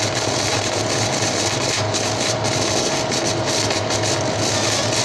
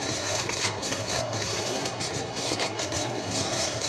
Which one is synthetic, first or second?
second